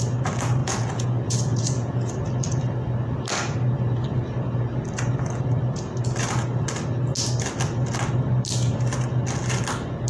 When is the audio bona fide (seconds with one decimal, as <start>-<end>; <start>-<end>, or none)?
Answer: 0.0-0.6; 2.1-10.1